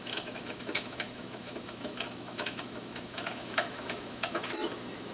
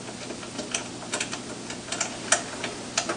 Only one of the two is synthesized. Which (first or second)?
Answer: first